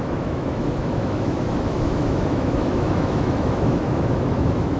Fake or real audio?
fake